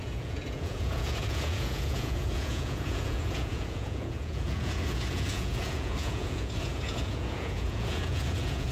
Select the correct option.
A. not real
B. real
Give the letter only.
A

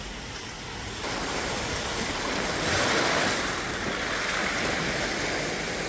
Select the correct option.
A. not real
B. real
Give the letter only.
B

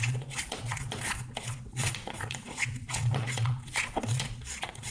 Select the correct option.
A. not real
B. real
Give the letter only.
A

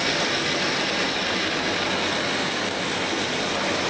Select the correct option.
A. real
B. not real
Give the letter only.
A